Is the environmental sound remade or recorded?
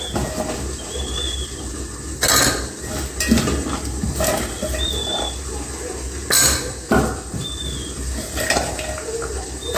recorded